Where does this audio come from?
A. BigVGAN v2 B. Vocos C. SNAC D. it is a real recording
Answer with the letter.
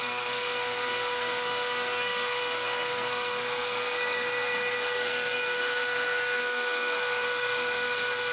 C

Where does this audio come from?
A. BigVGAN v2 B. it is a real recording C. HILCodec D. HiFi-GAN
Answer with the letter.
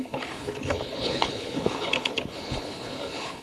C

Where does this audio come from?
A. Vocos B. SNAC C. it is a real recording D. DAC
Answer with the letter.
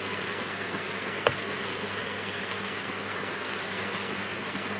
B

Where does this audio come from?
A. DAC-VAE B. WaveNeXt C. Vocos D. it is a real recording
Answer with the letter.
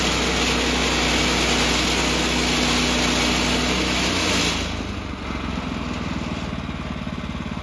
D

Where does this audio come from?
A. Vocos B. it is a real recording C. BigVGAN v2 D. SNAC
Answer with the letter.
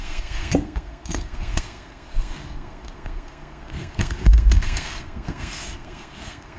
D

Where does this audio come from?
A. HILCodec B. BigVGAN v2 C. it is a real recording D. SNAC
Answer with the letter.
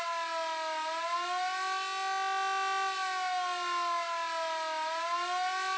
C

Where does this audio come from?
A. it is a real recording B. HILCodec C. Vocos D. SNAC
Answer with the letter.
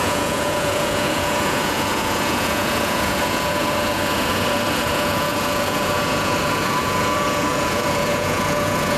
C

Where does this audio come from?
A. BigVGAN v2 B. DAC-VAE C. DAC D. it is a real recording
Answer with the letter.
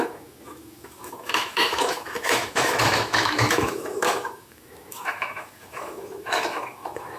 B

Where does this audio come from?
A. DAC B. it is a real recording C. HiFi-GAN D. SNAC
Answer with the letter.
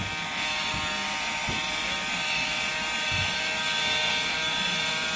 B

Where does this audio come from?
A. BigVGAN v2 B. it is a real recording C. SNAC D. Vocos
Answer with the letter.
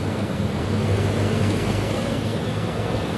C